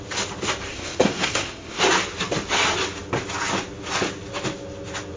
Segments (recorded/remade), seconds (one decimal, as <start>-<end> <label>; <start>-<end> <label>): 0.0-0.7 recorded; 0.7-1.8 remade; 1.8-5.2 recorded